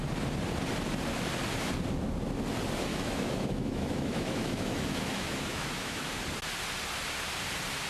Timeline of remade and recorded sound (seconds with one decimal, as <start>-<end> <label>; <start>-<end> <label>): 0.0-2.9 recorded; 2.9-6.1 remade; 6.1-7.9 recorded